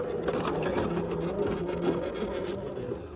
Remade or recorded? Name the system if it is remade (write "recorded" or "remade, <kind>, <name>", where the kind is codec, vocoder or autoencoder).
recorded